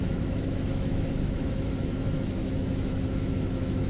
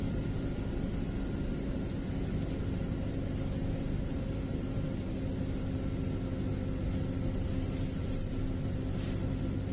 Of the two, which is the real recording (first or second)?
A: second